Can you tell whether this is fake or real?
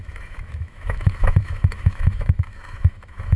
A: fake